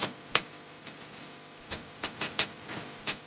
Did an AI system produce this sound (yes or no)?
yes